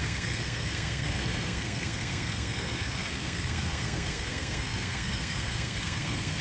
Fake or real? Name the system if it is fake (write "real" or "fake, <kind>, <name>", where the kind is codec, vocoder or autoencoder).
fake, codec, SNAC